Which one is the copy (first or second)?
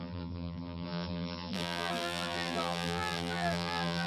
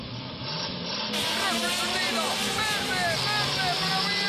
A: first